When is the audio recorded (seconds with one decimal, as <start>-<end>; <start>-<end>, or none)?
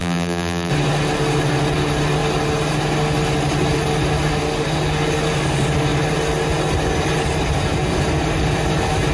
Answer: 0.7-9.1